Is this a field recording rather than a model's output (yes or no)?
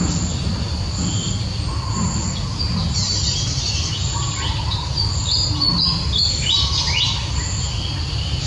yes